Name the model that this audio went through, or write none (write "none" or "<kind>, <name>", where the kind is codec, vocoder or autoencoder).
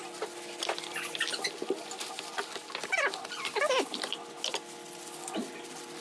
none